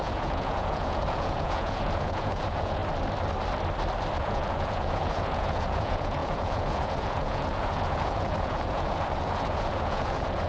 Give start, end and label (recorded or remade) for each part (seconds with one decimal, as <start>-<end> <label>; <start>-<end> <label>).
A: 0.0-2.8 remade; 2.8-4.2 recorded; 4.2-10.5 remade